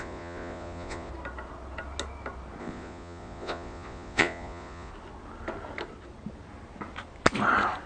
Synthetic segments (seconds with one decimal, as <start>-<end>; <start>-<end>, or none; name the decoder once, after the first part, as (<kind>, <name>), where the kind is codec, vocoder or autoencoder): 0.0-1.1 (vocoder, Vocos); 2.6-4.9